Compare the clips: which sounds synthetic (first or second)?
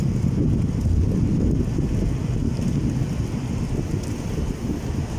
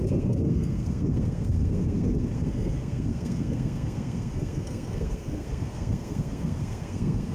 second